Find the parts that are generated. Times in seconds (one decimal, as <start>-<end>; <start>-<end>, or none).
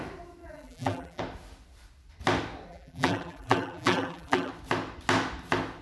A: 0.4-1.2; 2.7-4.5